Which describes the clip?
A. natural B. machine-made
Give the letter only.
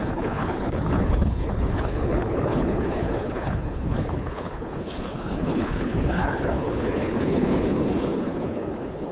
B